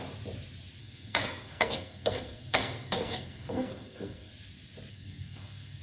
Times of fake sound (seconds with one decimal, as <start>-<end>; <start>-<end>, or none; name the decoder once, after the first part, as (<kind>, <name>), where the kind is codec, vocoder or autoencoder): 0.8-4.3 (codec, SNAC); 4.9-5.8